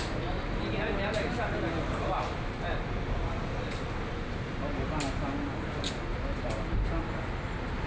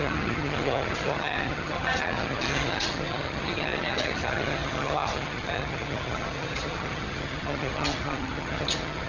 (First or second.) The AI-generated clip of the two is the second